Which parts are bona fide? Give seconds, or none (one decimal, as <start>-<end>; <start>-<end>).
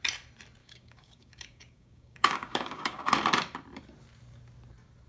0.0-0.6; 3.1-5.1